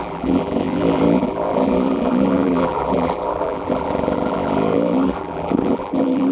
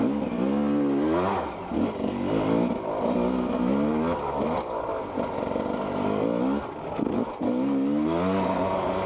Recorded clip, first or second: second